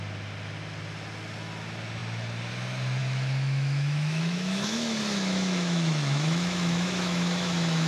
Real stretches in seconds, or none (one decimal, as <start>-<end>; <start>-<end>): 0.0-3.0